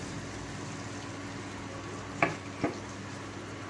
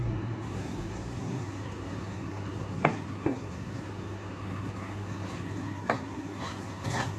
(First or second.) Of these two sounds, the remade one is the second